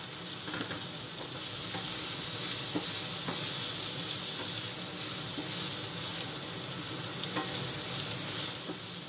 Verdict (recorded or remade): recorded